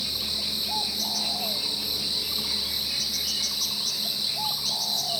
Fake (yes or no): no